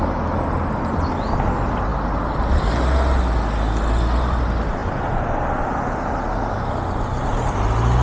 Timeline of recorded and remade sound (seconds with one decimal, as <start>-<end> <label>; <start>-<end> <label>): 0.0-8.0 recorded